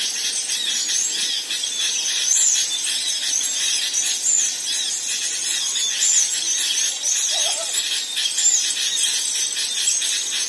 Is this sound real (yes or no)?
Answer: yes